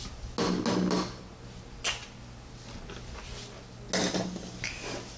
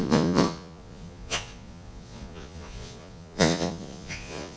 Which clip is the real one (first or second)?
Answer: first